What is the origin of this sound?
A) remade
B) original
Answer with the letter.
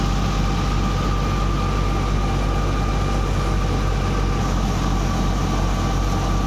B